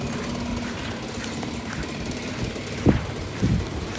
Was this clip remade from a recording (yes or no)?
no